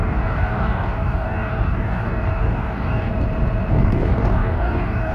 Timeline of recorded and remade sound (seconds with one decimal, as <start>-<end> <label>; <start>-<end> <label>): 0.0-3.1 remade; 3.1-3.7 recorded; 3.7-5.1 remade